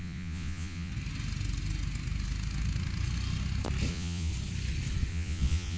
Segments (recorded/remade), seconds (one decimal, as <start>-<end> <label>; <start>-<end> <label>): 0.0-0.9 remade; 0.9-3.9 recorded; 3.9-4.3 remade; 4.3-5.1 recorded; 5.1-5.8 remade